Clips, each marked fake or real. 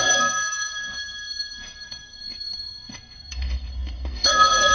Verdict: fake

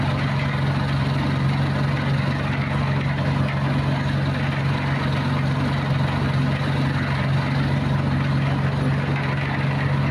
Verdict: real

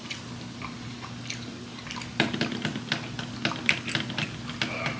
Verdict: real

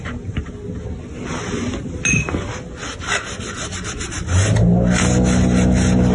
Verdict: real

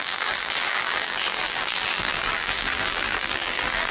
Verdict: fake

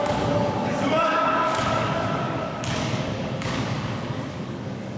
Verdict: fake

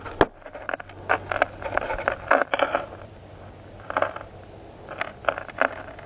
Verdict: real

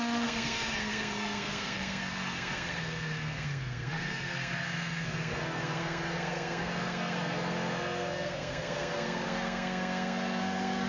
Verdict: fake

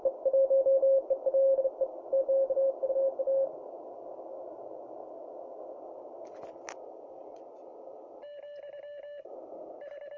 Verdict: real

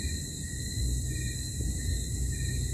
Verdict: real